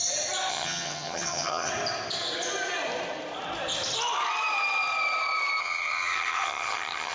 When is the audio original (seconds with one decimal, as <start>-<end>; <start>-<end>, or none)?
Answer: 0.0-0.5; 1.7-5.6